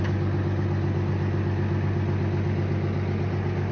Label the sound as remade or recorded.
recorded